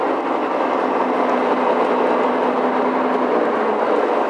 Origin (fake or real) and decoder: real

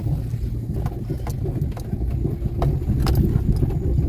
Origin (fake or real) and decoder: real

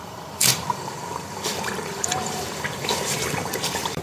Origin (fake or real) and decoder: fake, vocoder, BigVGAN v2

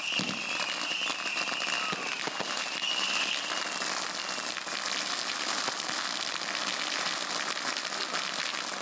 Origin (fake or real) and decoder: fake, vocoder, BigVGAN v2